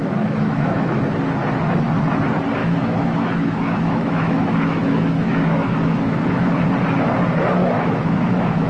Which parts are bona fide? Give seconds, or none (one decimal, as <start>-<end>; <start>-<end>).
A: 1.0-2.6; 6.6-7.6